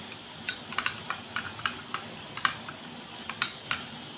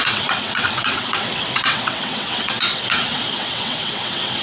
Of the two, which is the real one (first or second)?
first